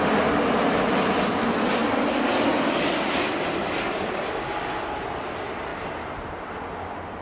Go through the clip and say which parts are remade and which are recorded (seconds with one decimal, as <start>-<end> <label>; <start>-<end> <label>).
0.0-7.2 recorded